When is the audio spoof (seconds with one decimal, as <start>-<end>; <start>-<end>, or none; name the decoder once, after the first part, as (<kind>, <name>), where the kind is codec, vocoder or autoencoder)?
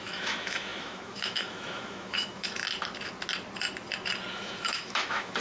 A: 0.0-2.6 (autoencoder, DAC-VAE); 4.3-5.4